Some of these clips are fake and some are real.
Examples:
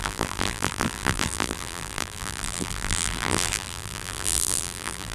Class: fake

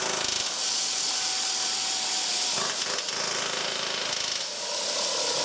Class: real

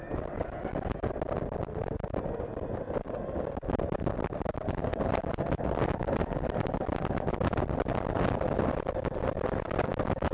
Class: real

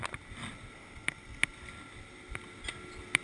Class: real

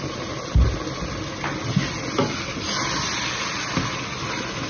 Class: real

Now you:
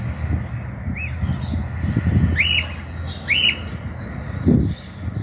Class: real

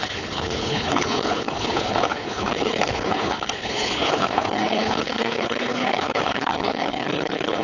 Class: fake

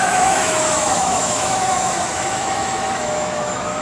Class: fake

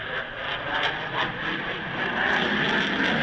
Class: real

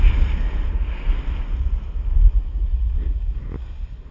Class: real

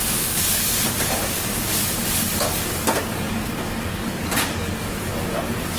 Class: fake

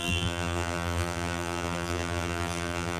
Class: fake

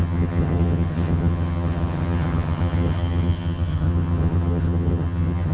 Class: fake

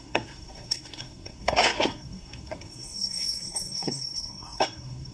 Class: fake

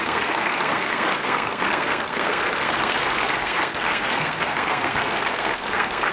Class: fake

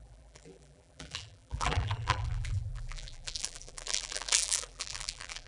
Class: fake